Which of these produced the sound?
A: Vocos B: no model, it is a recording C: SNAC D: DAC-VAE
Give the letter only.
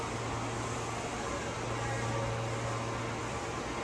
B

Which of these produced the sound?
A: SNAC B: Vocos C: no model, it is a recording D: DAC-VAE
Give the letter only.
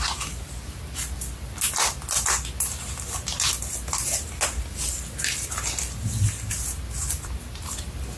C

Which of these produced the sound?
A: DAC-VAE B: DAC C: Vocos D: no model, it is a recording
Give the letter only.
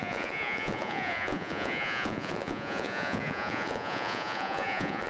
C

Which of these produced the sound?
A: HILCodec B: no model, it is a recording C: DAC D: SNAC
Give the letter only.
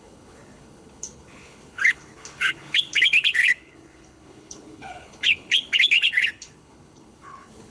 A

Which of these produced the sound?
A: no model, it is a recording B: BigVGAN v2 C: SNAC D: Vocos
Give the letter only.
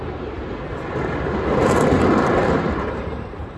B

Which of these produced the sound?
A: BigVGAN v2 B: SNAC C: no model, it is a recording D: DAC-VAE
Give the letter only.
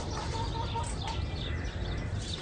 C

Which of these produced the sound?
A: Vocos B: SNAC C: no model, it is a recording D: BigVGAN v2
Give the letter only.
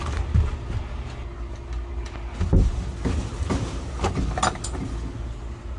C